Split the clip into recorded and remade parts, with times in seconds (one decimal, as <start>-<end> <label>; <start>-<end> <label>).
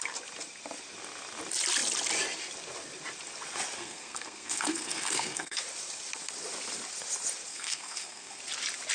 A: 0.0-3.8 recorded; 3.8-5.6 remade; 5.6-7.5 recorded; 7.5-8.4 remade; 8.4-8.9 recorded